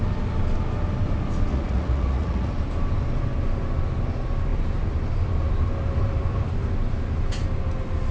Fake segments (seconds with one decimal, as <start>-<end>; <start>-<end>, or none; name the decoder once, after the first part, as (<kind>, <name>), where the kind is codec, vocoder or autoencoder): 1.5-2.5 (vocoder, Vocos)